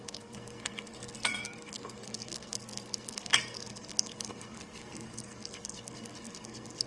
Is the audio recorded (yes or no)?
no